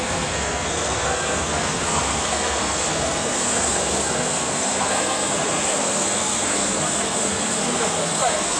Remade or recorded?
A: remade